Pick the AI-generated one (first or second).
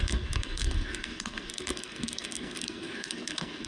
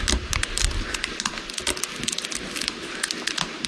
first